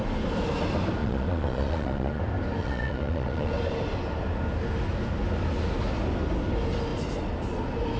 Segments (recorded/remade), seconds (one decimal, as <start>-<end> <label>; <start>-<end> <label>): 0.0-1.0 recorded; 1.0-2.2 remade; 2.2-2.6 recorded; 2.6-3.5 remade; 3.5-8.0 recorded